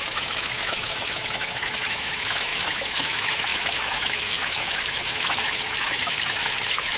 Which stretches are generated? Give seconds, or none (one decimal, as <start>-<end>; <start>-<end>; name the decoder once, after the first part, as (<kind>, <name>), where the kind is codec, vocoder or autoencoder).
0.0-7.0 (autoencoder, DAC-VAE)